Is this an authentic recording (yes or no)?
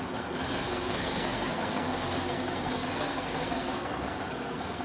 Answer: no